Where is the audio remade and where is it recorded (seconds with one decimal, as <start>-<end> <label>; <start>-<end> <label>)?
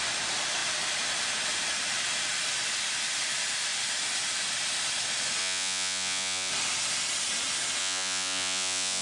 0.0-5.4 recorded; 5.4-6.5 remade; 6.5-7.8 recorded; 7.8-9.0 remade